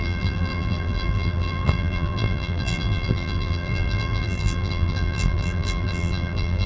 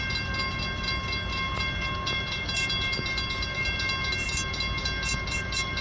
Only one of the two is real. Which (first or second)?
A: second